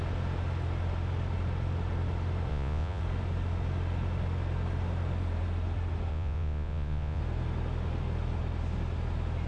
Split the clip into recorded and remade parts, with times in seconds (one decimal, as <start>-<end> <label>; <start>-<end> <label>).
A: 0.0-2.5 recorded; 2.5-3.0 remade; 3.0-6.1 recorded; 6.1-7.2 remade; 7.2-9.5 recorded